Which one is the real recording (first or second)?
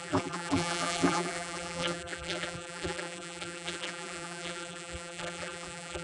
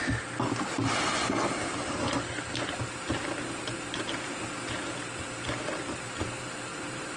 second